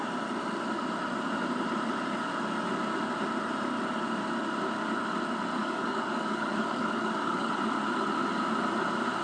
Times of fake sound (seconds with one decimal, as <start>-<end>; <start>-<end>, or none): 5.6-7.5